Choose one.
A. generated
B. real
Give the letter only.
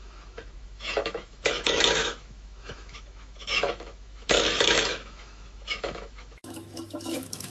A